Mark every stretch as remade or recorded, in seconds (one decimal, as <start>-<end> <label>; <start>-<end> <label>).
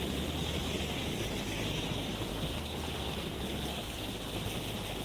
0.0-2.3 recorded; 2.3-4.1 remade; 4.1-5.0 recorded